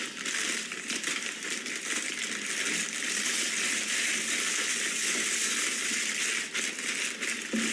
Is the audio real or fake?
real